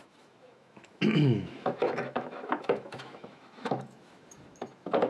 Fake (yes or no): yes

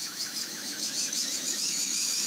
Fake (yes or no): yes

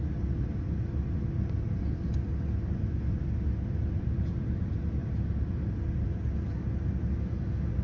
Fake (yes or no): no